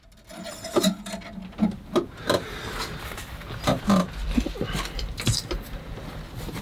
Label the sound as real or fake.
real